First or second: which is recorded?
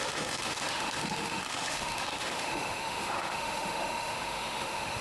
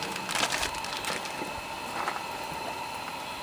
second